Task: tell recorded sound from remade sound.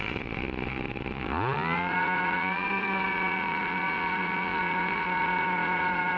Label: remade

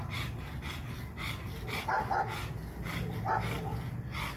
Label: recorded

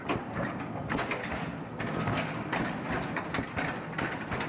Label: recorded